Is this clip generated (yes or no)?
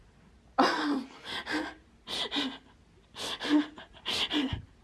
no